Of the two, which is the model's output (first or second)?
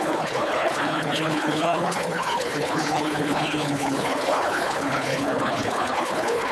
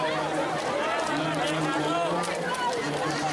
first